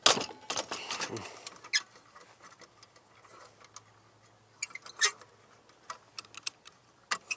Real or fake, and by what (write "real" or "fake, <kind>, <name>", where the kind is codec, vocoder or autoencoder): real